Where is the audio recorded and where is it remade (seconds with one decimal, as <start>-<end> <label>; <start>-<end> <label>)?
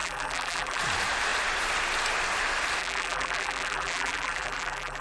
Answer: 0.0-0.8 remade; 0.8-2.8 recorded; 2.8-5.0 remade